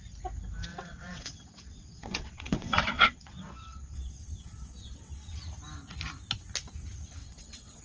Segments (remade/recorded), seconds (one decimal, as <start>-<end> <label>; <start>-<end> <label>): 0.0-0.7 recorded; 0.7-5.4 remade; 5.4-7.2 recorded; 7.2-7.8 remade